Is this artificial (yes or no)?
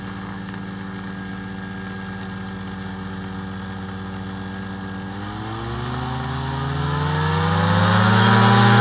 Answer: no